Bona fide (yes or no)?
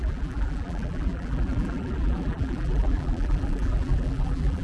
no